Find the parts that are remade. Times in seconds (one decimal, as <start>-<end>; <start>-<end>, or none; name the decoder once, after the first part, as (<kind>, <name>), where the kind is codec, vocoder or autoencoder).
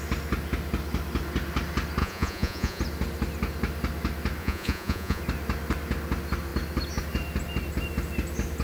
2.0-2.8 (vocoder, Vocos); 4.4-5.2